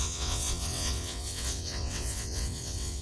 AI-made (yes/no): yes